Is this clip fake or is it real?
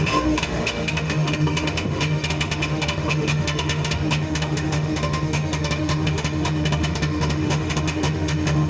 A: fake